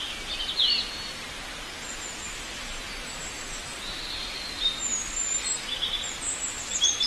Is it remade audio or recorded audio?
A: recorded